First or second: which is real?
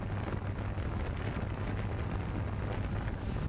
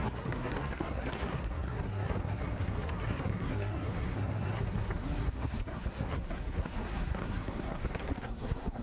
first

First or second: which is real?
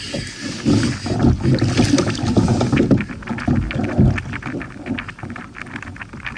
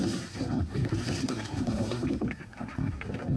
first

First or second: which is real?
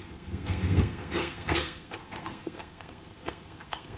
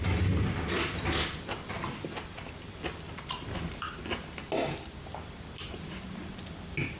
second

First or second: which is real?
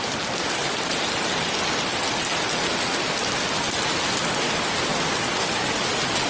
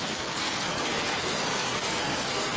first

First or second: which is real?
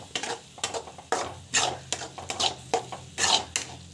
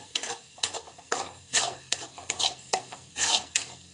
first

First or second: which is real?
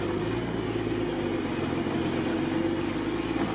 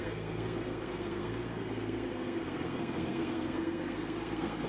first